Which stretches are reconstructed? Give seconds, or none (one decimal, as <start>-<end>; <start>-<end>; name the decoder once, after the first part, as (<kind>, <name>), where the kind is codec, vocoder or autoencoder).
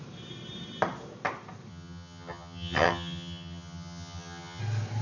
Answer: 1.7-4.6 (vocoder, HiFi-GAN)